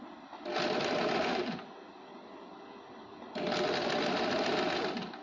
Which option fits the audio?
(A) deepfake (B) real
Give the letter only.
B